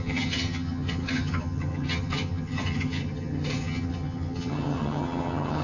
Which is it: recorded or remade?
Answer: remade